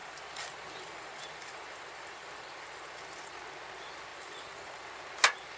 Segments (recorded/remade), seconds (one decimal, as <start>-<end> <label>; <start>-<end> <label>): 0.0-3.4 remade; 3.4-4.1 recorded; 4.1-5.0 remade; 5.0-5.6 recorded